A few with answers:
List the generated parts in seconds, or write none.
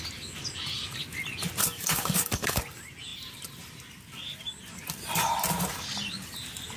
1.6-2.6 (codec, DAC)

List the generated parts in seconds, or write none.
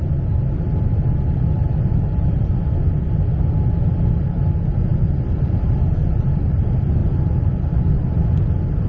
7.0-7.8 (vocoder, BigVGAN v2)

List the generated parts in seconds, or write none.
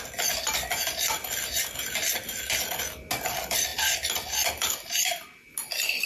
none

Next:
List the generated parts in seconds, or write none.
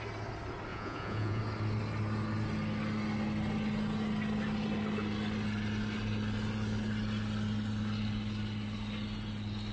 0.7-1.4 (vocoder, Vocos)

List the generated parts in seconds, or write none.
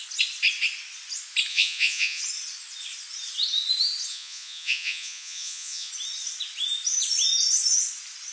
1.5-2.2 (vocoder, Vocos); 4.1-5.9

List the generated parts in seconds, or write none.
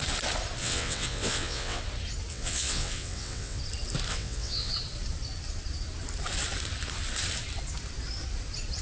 0.6-1.8 (vocoder, WaveNeXt); 2.3-3.6; 4.1-4.7